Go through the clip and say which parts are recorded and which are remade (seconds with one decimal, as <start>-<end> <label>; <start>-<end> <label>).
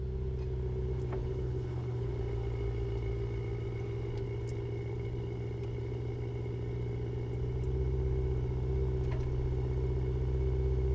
0.0-1.2 recorded; 1.2-2.1 remade; 2.1-10.9 recorded